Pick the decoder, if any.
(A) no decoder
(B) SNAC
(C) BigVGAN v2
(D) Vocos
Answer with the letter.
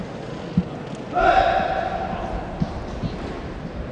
A